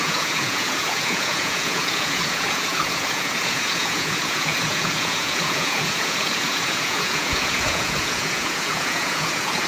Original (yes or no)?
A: no